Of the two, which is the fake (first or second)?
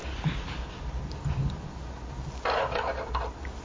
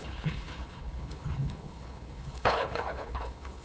second